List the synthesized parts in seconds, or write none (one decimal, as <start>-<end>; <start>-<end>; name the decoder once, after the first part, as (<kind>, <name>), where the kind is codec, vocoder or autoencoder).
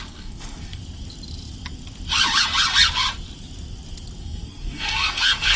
0.0-0.8 (codec, SNAC); 4.2-5.6